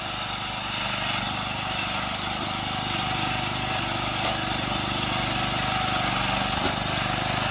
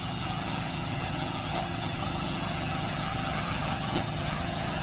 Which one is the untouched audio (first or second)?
first